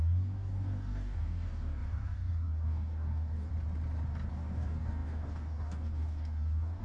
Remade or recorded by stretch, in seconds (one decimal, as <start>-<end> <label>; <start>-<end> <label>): 0.0-3.5 remade; 3.5-4.3 recorded; 4.3-6.8 remade